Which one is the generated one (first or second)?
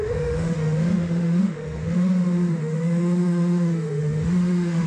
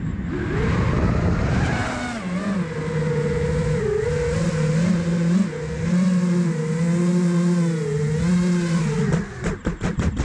first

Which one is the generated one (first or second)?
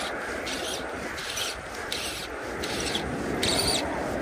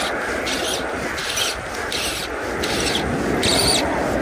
first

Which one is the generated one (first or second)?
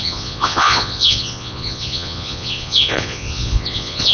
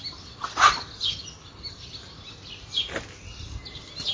first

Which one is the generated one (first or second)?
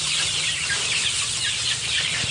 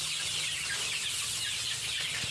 first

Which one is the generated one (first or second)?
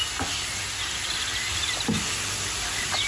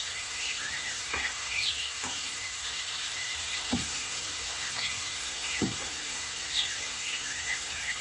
second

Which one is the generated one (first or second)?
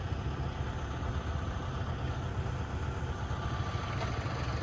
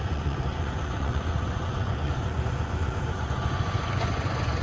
second